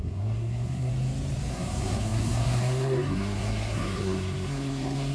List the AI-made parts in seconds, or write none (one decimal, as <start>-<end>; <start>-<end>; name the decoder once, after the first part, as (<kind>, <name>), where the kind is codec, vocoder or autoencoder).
0.0-0.9 (codec, SNAC); 1.5-5.1